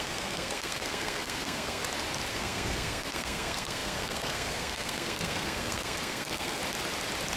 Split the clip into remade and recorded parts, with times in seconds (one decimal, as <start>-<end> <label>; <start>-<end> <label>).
0.0-1.8 remade; 1.8-2.3 recorded; 2.3-6.6 remade; 6.6-7.4 recorded